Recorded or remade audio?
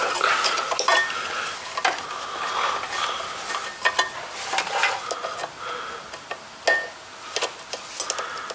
recorded